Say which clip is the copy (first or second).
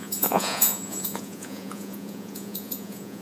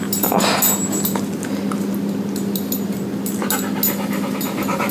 first